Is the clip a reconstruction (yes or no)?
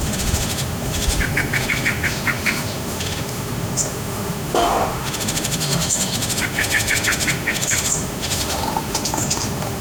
yes